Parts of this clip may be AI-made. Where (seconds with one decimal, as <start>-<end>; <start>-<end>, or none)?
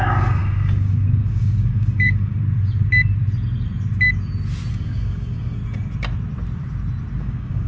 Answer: 0.0-2.4; 4.7-5.6; 7.2-7.7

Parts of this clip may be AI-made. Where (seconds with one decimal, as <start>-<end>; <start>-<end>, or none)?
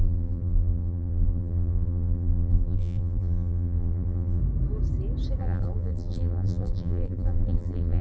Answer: 0.0-4.4; 5.4-8.0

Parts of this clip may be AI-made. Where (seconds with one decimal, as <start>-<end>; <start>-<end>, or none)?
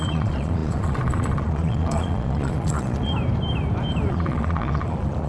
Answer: 0.0-3.1; 4.1-5.3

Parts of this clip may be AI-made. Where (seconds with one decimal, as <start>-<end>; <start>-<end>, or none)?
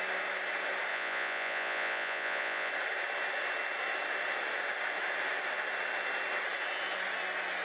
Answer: 0.9-2.7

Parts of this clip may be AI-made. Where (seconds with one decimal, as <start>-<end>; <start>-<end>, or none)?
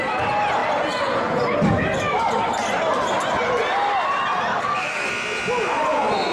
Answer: 4.5-5.1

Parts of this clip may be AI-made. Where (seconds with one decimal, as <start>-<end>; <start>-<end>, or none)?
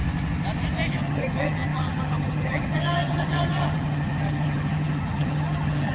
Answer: 0.9-5.9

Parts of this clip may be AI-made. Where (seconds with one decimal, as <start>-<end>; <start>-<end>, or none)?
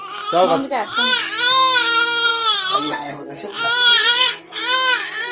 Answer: 2.3-3.1; 4.0-4.6